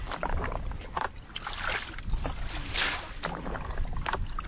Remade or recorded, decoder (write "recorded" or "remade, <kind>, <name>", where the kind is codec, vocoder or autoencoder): recorded